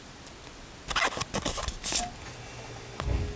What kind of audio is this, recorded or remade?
recorded